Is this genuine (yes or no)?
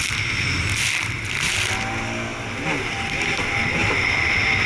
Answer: yes